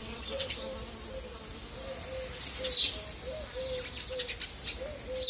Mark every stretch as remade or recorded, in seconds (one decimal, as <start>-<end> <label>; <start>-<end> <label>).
0.0-0.5 remade; 0.5-5.3 recorded